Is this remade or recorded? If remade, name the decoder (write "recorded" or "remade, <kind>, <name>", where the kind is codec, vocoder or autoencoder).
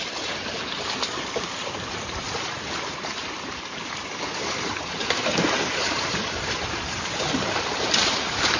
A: remade, vocoder, BigVGAN v2